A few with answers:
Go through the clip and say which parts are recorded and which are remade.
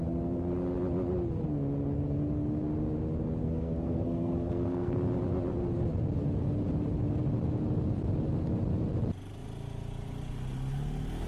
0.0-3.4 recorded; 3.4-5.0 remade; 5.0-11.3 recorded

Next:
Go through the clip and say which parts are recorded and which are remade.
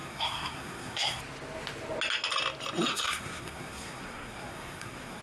0.0-1.2 remade; 1.2-2.9 recorded; 2.9-5.2 remade